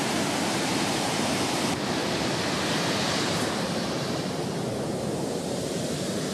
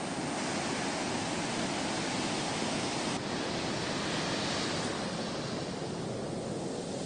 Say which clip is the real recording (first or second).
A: second